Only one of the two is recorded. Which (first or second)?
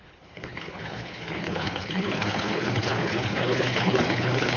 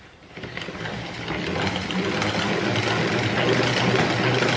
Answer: second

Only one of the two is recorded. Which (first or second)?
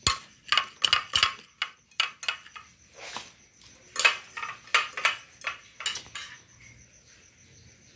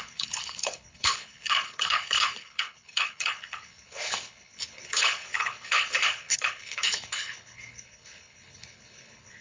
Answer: first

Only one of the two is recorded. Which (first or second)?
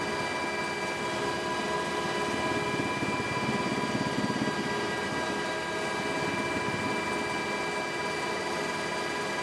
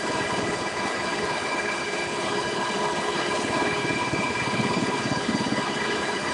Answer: first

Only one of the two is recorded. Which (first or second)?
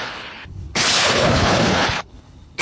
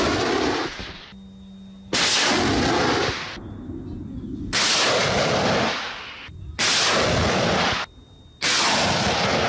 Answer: second